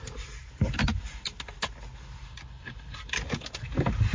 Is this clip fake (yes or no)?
no